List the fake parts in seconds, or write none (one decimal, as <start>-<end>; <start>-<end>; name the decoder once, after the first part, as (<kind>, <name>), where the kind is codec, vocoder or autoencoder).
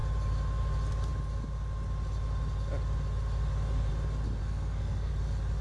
4.4-5.1 (codec, SNAC)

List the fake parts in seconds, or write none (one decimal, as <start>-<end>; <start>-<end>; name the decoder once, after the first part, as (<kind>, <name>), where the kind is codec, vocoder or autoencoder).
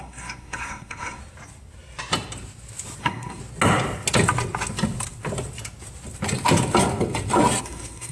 0.0-1.2 (codec, SNAC); 3.0-3.4; 7.6-8.1